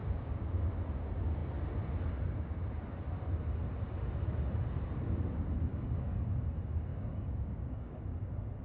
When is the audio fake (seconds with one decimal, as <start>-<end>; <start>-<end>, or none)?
0.0-0.7; 5.7-6.2; 6.9-8.0